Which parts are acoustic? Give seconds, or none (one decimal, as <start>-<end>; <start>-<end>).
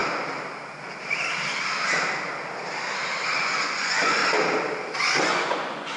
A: 0.0-3.4; 4.2-5.2